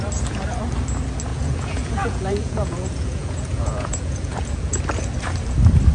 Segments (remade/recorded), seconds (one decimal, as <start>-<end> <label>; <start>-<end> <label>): 0.0-1.3 recorded; 1.3-4.8 remade; 4.8-5.9 recorded